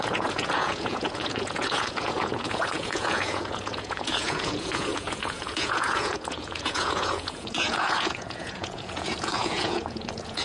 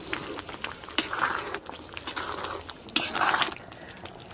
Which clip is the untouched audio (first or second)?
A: second